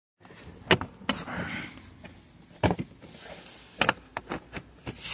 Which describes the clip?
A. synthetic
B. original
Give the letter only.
B